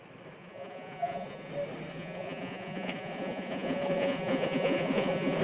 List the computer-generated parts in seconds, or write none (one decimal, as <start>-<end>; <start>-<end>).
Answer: 0.4-1.5; 1.9-5.4